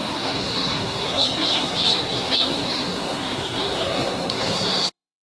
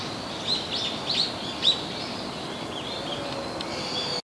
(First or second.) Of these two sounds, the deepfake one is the first